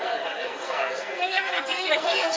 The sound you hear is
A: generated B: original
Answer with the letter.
A